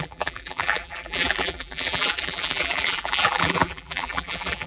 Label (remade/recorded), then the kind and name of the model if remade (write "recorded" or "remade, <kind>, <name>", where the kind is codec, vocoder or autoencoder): remade, vocoder, BigVGAN v2